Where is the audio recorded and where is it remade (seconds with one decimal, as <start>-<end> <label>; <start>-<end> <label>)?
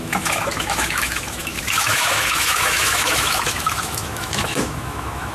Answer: 0.0-5.3 remade